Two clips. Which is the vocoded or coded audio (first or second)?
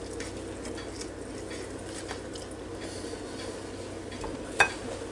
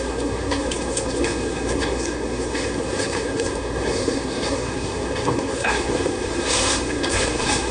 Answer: second